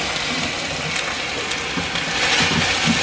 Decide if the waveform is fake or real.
real